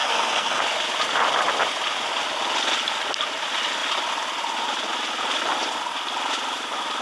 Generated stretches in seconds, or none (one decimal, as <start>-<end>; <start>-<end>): 0.0-0.6